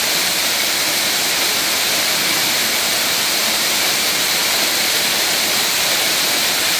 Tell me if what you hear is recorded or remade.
remade